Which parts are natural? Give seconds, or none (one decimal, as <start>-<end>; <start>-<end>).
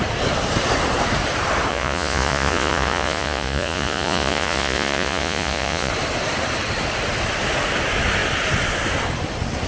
0.0-1.7; 5.9-9.7